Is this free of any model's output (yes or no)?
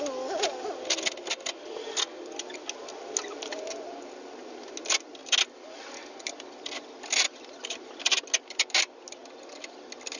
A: yes